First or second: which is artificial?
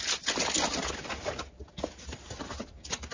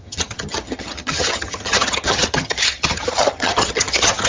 second